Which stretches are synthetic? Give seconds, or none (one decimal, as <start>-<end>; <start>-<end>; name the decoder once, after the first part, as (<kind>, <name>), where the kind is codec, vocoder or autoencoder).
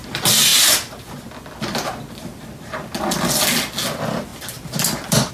none